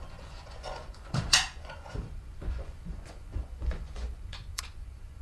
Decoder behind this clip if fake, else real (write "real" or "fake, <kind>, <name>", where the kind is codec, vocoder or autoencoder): fake, vocoder, Vocos